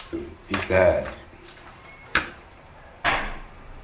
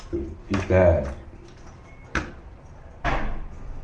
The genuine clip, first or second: second